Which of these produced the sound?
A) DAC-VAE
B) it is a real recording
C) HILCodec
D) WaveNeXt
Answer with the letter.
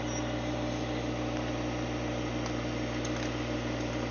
B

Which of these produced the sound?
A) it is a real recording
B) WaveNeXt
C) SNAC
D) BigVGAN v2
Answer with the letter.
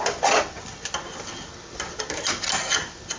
A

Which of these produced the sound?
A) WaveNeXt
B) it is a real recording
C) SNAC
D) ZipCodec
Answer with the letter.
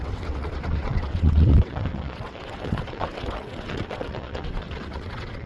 A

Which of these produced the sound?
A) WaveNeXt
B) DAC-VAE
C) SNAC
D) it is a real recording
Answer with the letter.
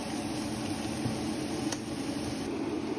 D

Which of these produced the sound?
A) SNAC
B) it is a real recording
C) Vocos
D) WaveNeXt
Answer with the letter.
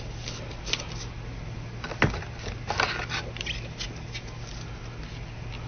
B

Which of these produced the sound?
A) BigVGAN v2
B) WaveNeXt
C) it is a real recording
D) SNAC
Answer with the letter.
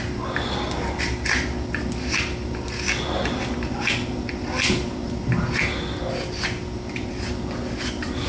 C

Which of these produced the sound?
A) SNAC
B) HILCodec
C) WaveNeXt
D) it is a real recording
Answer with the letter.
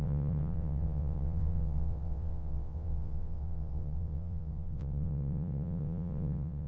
C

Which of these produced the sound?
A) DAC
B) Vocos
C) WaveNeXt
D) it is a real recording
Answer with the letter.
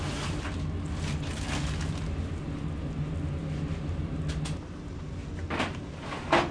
D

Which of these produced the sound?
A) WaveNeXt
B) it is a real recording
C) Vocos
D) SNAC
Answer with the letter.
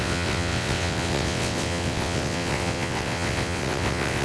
A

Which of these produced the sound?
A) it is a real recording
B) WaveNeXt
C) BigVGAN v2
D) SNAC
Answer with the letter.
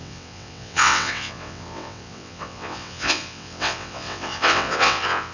B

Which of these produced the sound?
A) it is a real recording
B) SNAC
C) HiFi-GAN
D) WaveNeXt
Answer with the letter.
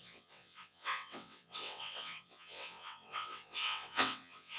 D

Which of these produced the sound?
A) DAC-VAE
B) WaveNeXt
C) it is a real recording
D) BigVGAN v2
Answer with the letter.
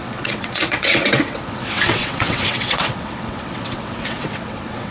B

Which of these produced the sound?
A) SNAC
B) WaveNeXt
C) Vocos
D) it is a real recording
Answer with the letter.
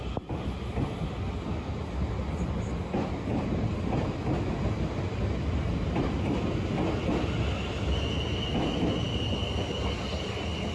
D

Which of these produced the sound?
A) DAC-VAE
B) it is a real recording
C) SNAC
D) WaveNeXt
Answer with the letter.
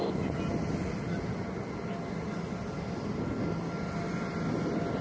B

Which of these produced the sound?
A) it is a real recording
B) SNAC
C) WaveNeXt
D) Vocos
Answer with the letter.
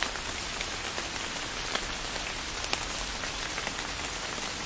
A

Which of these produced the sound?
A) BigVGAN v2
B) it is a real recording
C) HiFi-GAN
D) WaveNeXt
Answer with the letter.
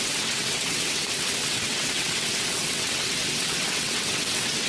D